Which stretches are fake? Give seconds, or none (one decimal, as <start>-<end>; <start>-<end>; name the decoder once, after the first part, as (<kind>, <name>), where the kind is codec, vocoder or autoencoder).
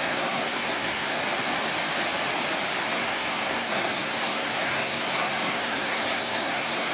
0.0-1.2 (codec, SNAC); 2.8-6.9